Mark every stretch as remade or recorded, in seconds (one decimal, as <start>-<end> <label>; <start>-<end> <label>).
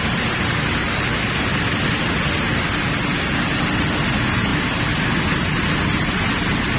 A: 0.0-6.8 recorded